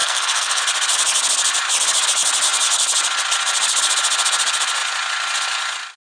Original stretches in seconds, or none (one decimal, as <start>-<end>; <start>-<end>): 0.6-6.1